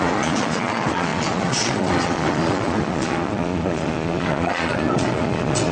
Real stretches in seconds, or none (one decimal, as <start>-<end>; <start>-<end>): none